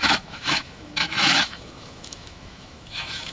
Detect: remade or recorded remade